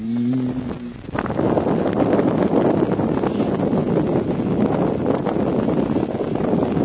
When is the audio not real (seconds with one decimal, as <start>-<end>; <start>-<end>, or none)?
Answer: none